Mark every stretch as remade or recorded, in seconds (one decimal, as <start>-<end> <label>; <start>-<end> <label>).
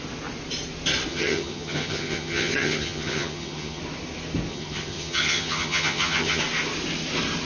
0.0-1.1 recorded; 1.1-3.8 remade; 3.8-4.5 recorded; 4.5-6.4 remade; 6.4-7.4 recorded